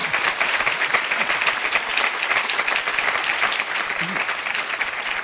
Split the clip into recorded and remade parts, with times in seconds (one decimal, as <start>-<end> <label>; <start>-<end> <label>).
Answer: 0.0-5.2 remade